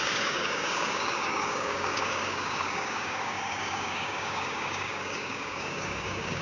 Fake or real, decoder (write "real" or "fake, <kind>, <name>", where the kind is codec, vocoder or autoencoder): fake, codec, DAC